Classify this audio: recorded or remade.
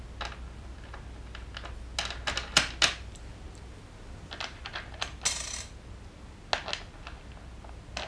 recorded